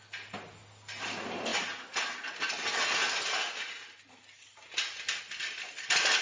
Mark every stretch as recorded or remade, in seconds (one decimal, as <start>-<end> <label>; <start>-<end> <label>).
0.0-6.2 recorded